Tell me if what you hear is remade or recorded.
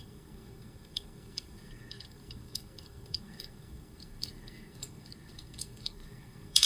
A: remade